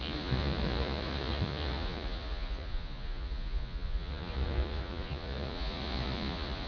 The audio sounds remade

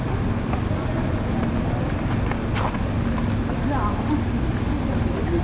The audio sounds recorded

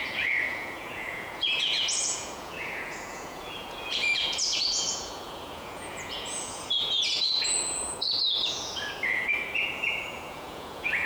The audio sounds remade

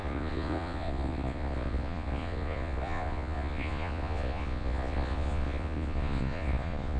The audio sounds remade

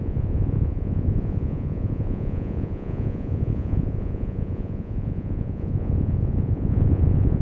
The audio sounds remade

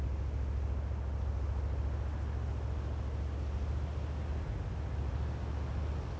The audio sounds recorded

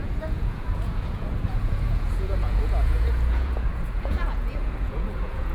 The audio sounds remade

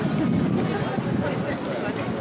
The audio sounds recorded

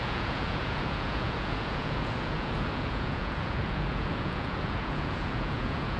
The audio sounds remade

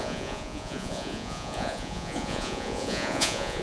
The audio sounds remade